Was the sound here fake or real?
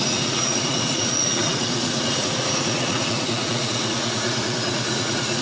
fake